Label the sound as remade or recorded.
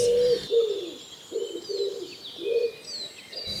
recorded